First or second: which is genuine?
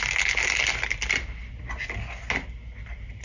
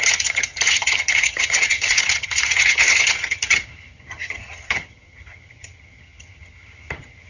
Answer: first